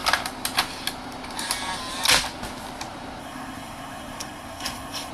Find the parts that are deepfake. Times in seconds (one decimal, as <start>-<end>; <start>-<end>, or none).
3.2-5.1